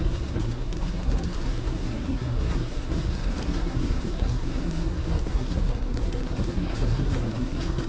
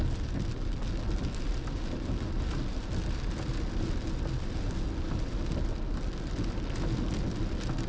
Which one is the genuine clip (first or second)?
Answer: second